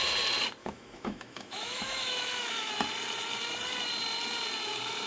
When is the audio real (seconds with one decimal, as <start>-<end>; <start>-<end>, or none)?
0.0-0.6; 2.7-5.1